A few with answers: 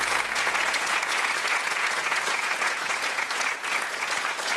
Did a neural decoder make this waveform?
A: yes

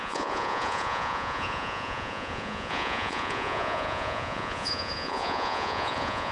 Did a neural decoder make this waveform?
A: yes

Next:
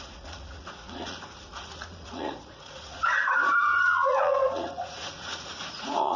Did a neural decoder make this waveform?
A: yes